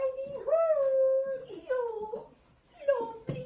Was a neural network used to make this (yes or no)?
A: no